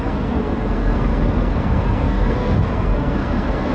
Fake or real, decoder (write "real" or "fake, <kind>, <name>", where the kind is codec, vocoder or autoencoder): fake, codec, SNAC